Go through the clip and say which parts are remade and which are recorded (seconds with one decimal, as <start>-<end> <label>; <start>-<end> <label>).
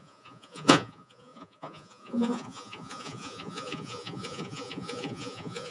0.0-5.7 remade